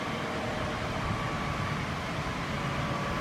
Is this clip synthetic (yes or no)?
no